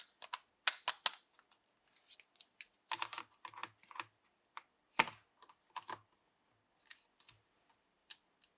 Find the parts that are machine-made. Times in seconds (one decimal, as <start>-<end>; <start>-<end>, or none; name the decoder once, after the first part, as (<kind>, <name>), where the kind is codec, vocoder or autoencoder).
none